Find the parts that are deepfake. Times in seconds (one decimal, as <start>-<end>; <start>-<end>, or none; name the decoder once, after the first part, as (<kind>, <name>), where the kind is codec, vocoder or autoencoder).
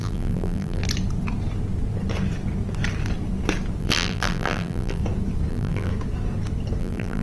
0.0-0.8 (vocoder, BigVGAN v2); 3.8-5.0; 5.5-5.9; 6.8-7.2